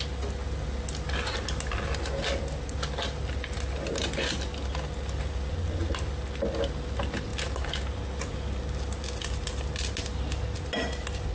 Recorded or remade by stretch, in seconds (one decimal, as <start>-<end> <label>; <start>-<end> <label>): 0.0-11.3 recorded